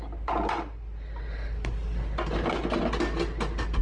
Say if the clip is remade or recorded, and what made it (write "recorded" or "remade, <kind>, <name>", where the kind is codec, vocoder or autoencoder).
recorded